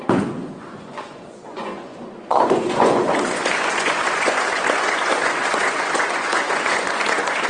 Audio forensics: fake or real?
fake